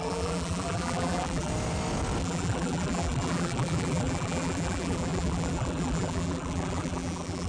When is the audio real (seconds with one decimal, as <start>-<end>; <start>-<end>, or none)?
1.5-2.2